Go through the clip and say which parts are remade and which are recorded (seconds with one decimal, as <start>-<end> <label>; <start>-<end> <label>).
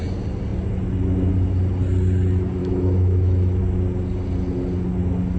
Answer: 0.0-2.6 recorded; 2.6-3.6 remade; 3.6-5.4 recorded